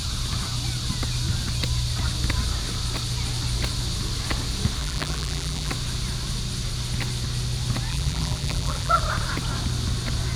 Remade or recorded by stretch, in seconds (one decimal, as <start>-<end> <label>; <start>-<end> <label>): 0.0-4.8 recorded; 4.8-5.7 remade; 5.7-7.9 recorded; 7.9-9.0 remade; 9.0-10.4 recorded